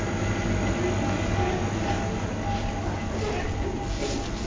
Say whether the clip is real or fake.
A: real